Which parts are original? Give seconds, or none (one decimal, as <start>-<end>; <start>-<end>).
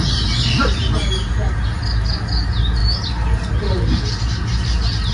0.0-5.1